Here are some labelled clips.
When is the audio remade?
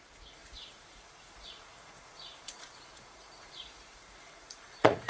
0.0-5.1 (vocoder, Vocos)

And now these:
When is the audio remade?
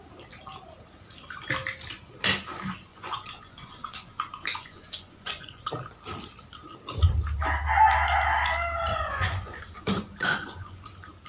2.9-5.7 (vocoder, Vocos); 8.9-10.9